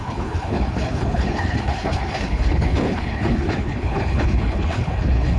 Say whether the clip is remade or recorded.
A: remade